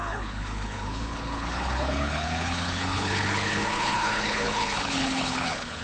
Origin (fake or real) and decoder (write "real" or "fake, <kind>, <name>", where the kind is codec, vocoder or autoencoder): fake, codec, HILCodec